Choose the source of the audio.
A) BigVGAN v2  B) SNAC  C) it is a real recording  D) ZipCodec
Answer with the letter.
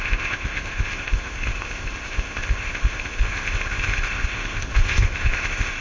D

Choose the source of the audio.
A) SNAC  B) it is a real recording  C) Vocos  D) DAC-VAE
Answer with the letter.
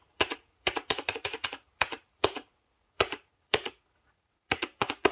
C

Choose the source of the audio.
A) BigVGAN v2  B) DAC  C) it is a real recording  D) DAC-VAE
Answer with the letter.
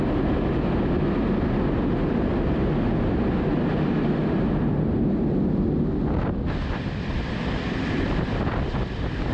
C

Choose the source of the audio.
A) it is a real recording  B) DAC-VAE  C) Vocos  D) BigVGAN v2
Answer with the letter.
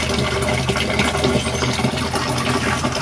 A